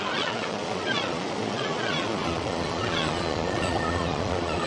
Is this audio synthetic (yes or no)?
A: yes